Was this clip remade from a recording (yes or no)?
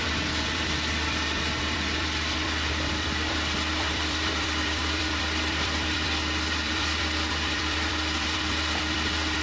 yes